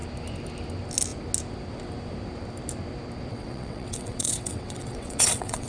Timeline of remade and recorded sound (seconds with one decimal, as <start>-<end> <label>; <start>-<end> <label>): 0.0-3.3 recorded; 3.3-5.7 remade